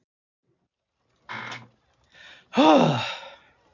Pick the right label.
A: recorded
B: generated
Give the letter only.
A